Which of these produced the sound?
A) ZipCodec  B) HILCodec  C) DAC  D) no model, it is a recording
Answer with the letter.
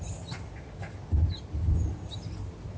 D